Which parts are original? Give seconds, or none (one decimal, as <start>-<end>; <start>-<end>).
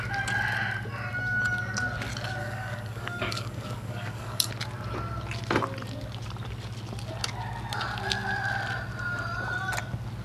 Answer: 0.0-2.4; 4.5-10.2